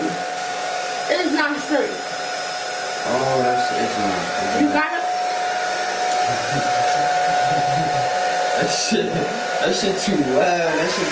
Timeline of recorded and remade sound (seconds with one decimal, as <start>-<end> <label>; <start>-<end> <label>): 0.0-0.4 recorded; 0.4-1.0 remade; 1.0-11.1 recorded